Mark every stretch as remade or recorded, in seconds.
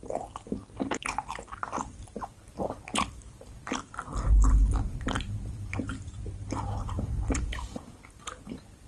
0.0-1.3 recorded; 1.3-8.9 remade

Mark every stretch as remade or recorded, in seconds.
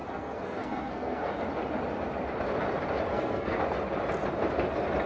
0.0-1.3 remade; 1.3-3.1 recorded; 3.1-3.6 remade; 3.6-5.1 recorded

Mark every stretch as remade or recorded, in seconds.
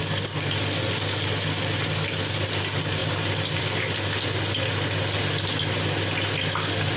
0.0-7.0 recorded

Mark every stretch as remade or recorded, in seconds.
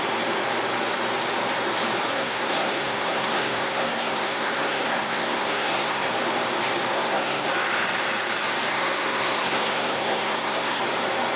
0.0-2.1 recorded; 2.1-6.0 remade; 6.0-6.9 recorded; 6.9-7.5 remade; 7.5-8.7 recorded; 8.7-10.8 remade; 10.8-11.4 recorded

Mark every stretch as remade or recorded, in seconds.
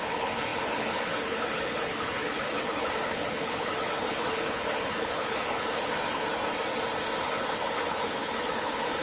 0.0-6.3 remade; 6.3-7.2 recorded; 7.2-9.0 remade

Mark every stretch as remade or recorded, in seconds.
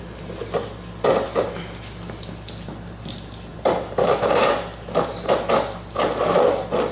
0.0-3.5 recorded; 3.5-4.5 remade; 4.5-6.9 recorded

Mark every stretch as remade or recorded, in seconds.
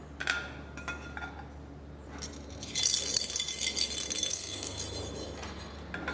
0.0-4.3 recorded; 4.3-4.8 remade; 4.8-6.1 recorded